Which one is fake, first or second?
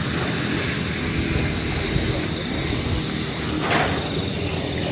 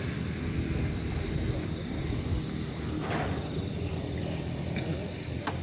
second